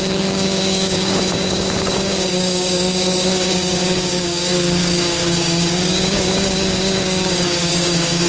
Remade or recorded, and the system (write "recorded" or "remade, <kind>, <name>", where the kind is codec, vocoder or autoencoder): remade, codec, DAC